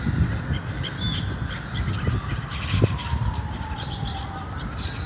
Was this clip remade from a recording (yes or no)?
no